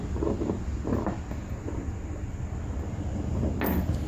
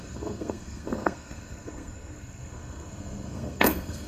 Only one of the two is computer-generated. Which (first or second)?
second